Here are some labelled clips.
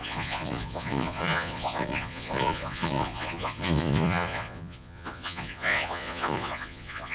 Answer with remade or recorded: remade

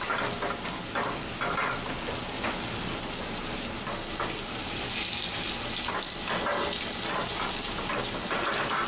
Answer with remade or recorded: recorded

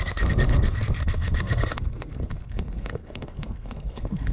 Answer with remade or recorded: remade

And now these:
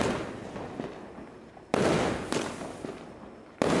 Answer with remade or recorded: recorded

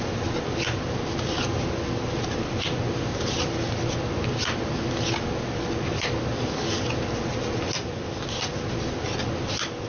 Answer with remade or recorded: recorded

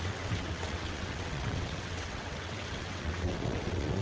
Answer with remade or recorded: remade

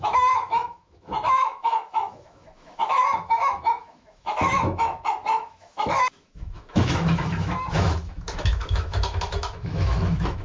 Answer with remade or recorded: remade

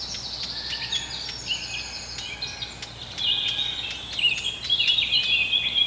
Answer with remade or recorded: recorded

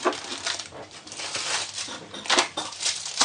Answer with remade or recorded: recorded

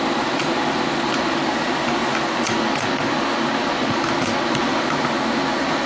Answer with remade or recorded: recorded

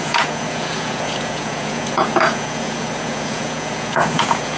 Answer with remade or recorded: remade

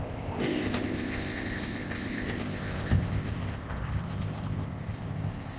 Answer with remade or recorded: remade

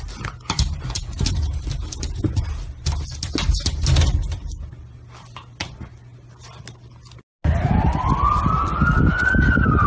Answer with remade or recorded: recorded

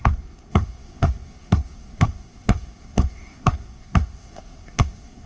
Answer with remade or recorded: remade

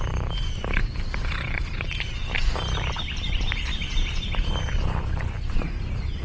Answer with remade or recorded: recorded